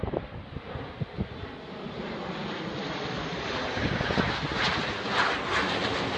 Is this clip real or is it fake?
real